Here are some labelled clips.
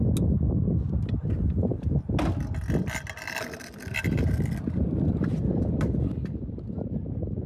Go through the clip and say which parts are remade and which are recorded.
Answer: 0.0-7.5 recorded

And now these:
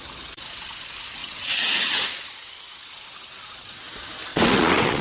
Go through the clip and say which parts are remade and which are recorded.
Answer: 0.0-1.2 recorded; 1.2-1.7 remade; 1.7-4.3 recorded; 4.3-5.0 remade

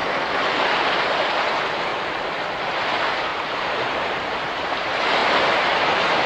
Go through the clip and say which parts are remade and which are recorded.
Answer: 0.0-1.4 recorded; 1.4-1.9 remade; 1.9-2.6 recorded; 2.6-6.3 remade

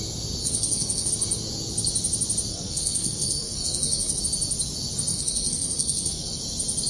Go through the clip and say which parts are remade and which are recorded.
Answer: 0.0-0.4 recorded; 0.4-1.1 remade; 1.1-2.5 recorded; 2.5-4.2 remade; 4.2-5.1 recorded; 5.1-6.4 remade; 6.4-6.9 recorded

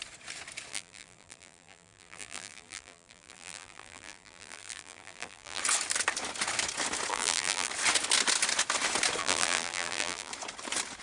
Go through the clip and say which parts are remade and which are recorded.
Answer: 0.0-0.7 recorded; 0.7-5.6 remade; 5.6-7.1 recorded; 7.1-7.7 remade; 7.7-9.2 recorded; 9.2-10.3 remade; 10.3-11.0 recorded